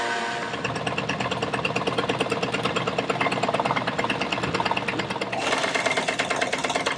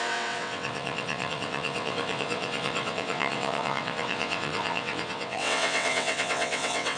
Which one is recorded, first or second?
first